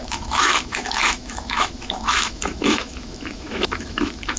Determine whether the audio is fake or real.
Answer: fake